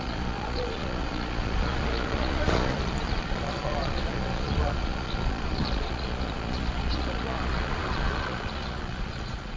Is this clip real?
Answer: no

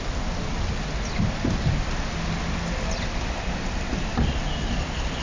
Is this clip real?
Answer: yes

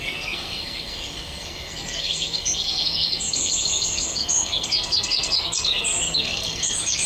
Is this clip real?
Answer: no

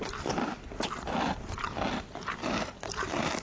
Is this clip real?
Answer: yes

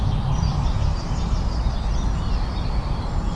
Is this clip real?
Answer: yes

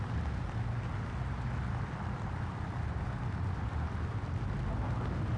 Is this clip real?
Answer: yes